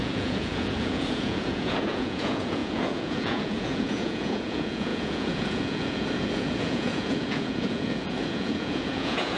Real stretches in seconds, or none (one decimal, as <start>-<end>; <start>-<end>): none